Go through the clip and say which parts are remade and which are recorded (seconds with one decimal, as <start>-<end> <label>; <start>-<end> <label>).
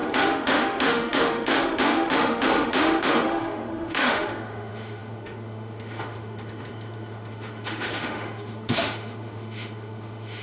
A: 0.0-10.4 remade